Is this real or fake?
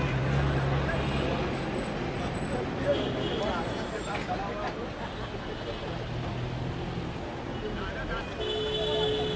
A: real